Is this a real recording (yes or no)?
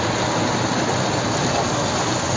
yes